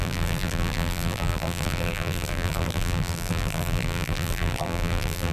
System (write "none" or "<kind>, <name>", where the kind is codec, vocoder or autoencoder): vocoder, BigVGAN v2